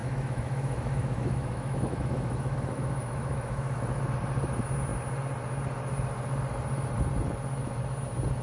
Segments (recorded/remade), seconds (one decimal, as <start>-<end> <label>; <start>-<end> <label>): 0.0-3.8 remade; 3.8-8.4 recorded